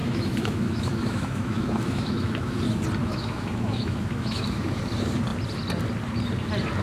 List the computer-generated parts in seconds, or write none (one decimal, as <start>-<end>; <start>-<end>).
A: 0.0-2.6; 3.0-4.8

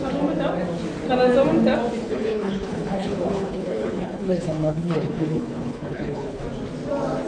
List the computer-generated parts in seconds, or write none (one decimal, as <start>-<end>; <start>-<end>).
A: 2.0-6.4